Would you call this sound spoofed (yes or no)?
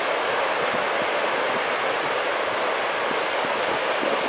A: no